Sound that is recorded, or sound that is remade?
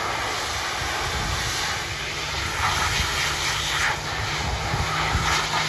recorded